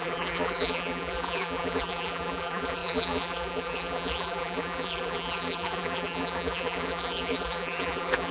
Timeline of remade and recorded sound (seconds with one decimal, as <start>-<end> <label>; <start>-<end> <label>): 0.0-8.3 remade